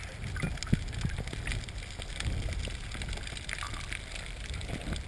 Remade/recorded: recorded